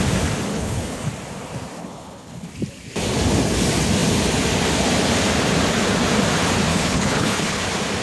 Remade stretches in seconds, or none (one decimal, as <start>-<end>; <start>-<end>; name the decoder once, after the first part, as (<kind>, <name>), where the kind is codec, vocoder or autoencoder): 0.5-1.1 (codec, HILCodec); 1.8-2.5; 6.7-7.6